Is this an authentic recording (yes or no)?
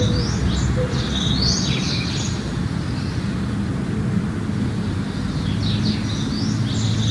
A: yes